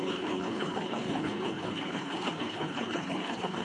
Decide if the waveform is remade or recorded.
remade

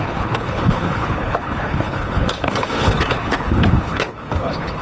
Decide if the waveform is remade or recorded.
remade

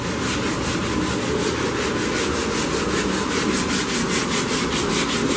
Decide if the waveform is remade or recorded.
recorded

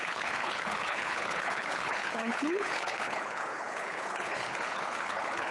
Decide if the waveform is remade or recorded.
remade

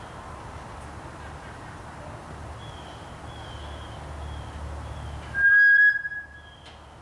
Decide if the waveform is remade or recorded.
recorded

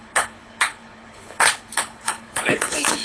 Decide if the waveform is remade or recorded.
remade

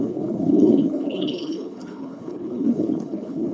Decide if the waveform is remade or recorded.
remade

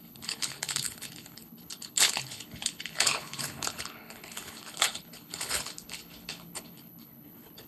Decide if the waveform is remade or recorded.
remade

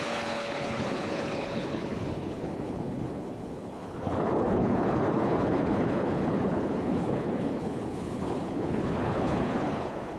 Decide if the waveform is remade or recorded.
remade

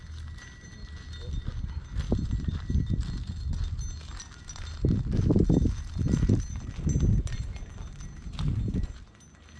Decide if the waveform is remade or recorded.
recorded